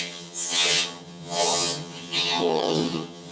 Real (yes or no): no